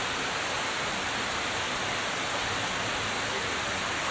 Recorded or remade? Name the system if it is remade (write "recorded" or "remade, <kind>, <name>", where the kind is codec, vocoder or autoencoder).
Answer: recorded